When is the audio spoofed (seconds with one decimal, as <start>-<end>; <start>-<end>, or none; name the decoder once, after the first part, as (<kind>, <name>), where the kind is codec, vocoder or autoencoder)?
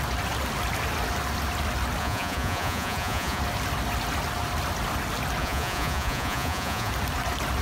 2.0-3.4 (vocoder, Vocos); 5.4-6.9